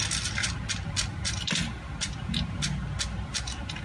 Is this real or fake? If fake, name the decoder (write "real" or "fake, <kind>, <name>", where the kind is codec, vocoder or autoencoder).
real